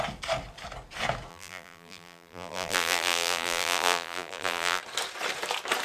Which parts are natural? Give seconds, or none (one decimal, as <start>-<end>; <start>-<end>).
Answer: 0.0-1.3; 4.8-5.8